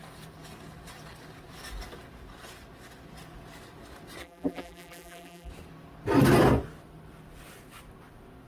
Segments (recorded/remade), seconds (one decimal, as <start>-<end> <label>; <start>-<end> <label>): 0.0-4.2 recorded; 4.2-5.5 remade; 5.5-8.5 recorded

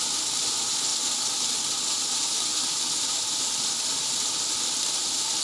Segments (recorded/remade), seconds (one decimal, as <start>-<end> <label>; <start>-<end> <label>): 0.0-5.4 recorded

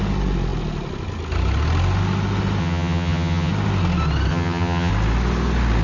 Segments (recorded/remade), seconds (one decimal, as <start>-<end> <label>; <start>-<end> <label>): 0.0-2.6 recorded; 2.6-3.5 remade; 3.5-4.3 recorded; 4.3-4.9 remade; 4.9-5.8 recorded

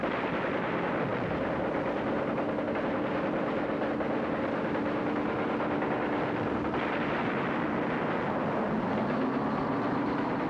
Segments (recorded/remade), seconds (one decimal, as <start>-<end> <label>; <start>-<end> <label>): 0.0-10.5 recorded